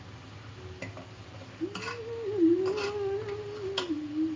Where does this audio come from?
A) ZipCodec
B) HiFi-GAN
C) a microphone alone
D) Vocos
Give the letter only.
C